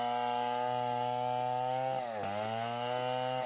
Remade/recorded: recorded